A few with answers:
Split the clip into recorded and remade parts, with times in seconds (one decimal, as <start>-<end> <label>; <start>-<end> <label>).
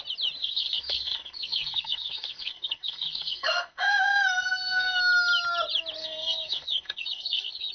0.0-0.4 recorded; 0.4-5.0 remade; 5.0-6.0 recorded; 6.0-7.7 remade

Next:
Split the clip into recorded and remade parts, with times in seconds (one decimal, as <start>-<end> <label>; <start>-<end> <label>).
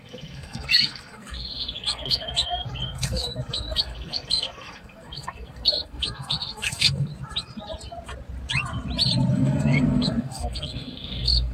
0.0-7.1 remade; 7.1-9.3 recorded; 9.3-11.5 remade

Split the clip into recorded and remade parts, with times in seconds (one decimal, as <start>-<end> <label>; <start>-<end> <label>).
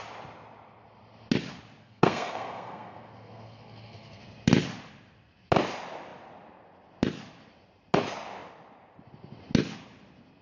0.0-1.8 recorded; 1.8-4.2 remade; 4.2-10.4 recorded